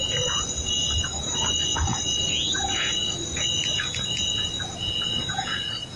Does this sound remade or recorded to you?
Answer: remade